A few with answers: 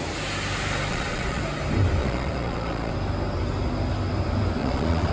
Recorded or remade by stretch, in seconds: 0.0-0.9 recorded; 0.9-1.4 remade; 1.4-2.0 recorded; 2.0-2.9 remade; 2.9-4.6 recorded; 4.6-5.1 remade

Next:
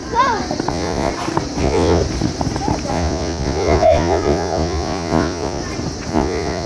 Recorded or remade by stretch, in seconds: 0.0-0.7 recorded; 0.7-1.1 remade; 1.1-1.6 recorded; 1.6-2.0 remade; 2.0-2.9 recorded; 2.9-5.6 remade; 5.6-6.1 recorded; 6.1-6.7 remade

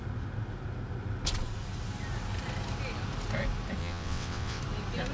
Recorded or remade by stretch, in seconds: 0.0-3.8 recorded; 3.8-4.6 remade; 4.6-5.1 recorded

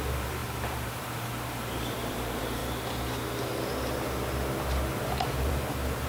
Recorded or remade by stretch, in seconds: 0.0-2.6 remade; 2.6-4.6 recorded; 4.6-6.1 remade